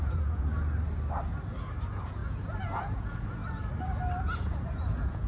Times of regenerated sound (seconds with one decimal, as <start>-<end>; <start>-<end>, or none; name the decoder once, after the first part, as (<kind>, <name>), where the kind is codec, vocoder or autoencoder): 0.0-0.5 (vocoder, Vocos); 1.6-3.4; 4.2-5.3